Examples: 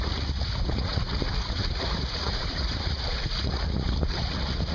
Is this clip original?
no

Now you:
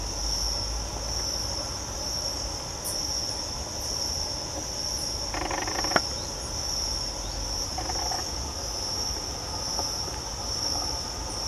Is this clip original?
yes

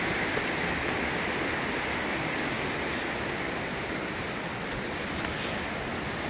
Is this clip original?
yes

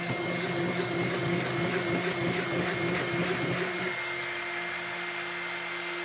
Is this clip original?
yes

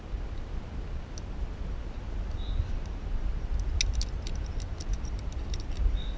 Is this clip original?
yes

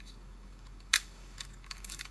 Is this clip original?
no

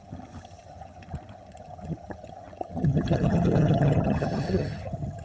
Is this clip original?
no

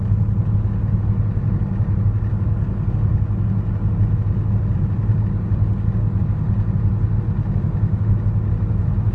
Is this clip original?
yes